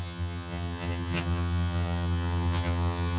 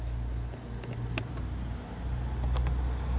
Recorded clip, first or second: second